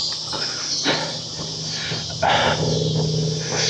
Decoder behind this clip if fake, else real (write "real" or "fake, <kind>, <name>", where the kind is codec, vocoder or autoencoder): real